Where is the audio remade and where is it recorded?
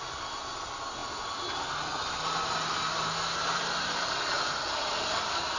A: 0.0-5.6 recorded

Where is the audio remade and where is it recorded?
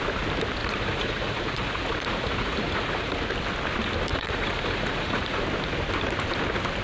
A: 0.0-0.6 recorded; 0.6-3.1 remade; 3.1-4.1 recorded; 4.1-5.4 remade; 5.4-6.8 recorded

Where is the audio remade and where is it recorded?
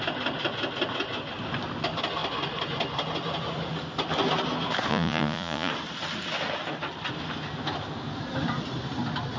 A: 0.0-4.9 recorded; 4.9-5.7 remade; 5.7-9.4 recorded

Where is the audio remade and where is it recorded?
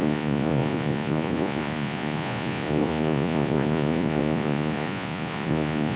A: 0.0-6.0 remade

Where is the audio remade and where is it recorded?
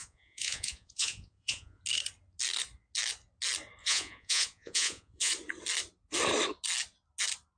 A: 0.0-1.8 remade; 1.8-3.8 recorded; 3.8-5.3 remade; 5.3-7.6 recorded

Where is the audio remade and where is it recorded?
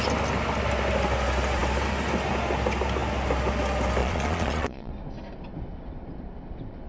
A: 0.0-4.0 recorded; 4.0-4.9 remade; 4.9-6.9 recorded